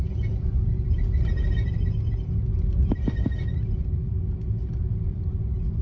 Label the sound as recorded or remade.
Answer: recorded